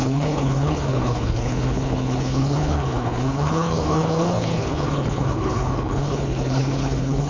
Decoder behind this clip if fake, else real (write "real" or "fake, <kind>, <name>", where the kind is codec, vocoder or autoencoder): fake, codec, HILCodec